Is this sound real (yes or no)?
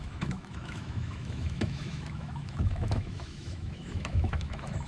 no